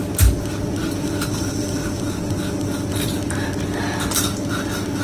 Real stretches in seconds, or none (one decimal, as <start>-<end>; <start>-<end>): 0.0-5.0